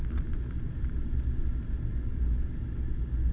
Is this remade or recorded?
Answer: recorded